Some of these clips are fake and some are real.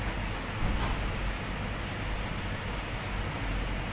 real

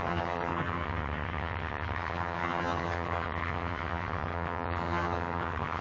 fake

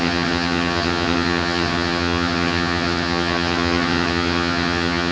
fake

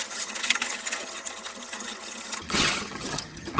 fake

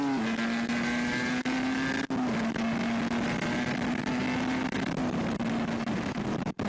real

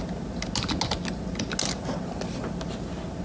real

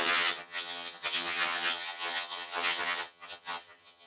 fake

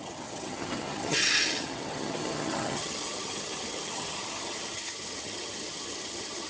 fake